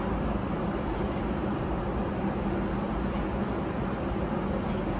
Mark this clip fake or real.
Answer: real